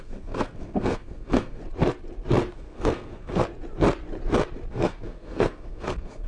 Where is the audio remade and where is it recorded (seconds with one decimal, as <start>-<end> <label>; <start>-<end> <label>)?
0.0-1.6 remade; 1.6-2.5 recorded; 2.5-3.4 remade; 3.4-4.7 recorded; 4.7-6.3 remade

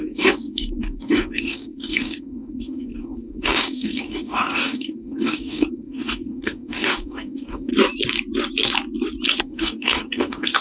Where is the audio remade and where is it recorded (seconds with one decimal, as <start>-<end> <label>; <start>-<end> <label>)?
0.0-7.7 remade; 7.7-9.4 recorded; 9.4-10.6 remade

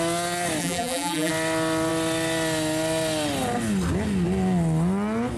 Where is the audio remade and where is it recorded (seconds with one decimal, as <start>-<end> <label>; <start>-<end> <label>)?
0.0-0.6 recorded; 0.6-1.3 remade; 1.3-5.4 recorded